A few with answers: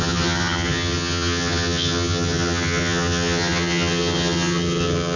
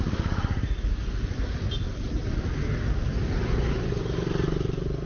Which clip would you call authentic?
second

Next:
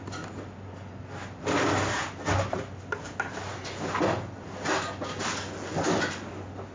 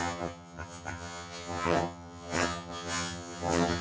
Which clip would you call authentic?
first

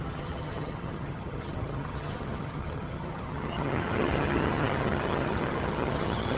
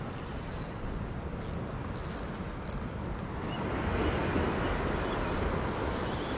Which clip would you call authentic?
second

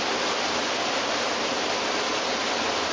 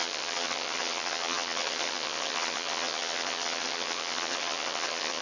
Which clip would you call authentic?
first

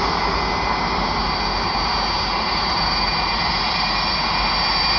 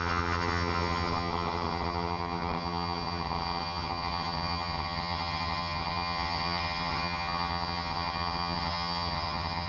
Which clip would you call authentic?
first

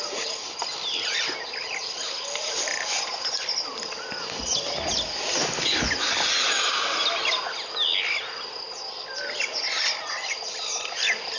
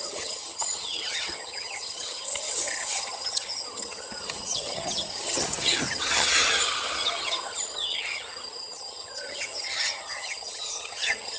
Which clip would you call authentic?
first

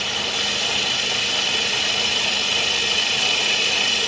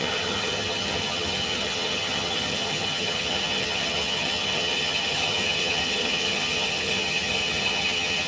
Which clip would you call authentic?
first